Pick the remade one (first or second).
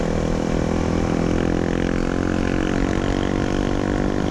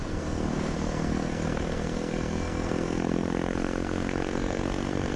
second